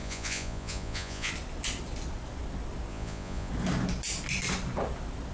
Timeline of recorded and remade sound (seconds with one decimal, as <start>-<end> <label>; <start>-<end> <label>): 0.0-1.3 remade; 1.3-2.9 recorded; 2.9-3.5 remade; 3.5-5.3 recorded